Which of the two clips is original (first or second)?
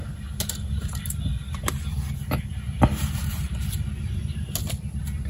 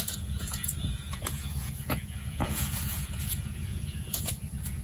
first